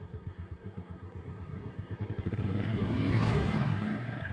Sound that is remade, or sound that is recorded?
remade